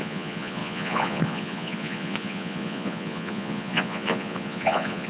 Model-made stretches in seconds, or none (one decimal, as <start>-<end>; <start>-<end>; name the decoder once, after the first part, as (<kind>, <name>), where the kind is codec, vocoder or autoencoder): 0.0-5.1 (vocoder, Vocos)